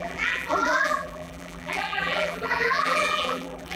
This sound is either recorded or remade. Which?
remade